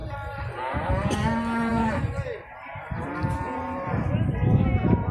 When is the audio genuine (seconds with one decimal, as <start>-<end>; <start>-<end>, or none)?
0.9-1.7; 4.6-5.1